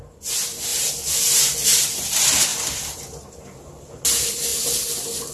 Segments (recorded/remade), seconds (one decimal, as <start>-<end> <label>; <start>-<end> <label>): 0.0-0.7 recorded; 0.7-1.4 remade; 1.4-2.5 recorded; 2.5-4.0 remade; 4.0-5.3 recorded